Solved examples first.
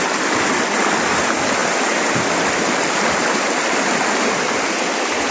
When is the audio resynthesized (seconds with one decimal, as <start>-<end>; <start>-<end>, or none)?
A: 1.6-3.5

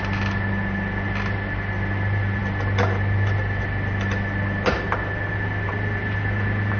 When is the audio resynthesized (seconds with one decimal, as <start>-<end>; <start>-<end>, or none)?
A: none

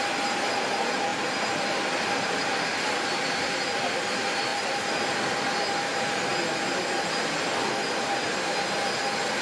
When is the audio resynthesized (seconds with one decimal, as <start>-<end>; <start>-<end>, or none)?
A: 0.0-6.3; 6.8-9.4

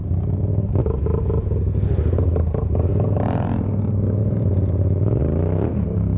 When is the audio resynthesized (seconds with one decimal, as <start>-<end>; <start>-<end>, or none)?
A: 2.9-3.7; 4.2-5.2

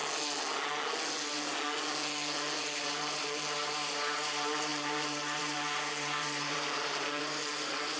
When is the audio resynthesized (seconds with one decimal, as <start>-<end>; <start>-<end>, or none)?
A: 2.6-8.0

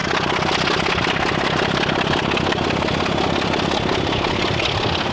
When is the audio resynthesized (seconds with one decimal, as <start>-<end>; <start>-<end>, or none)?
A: none

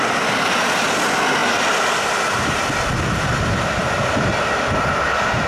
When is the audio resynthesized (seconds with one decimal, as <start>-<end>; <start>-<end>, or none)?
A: none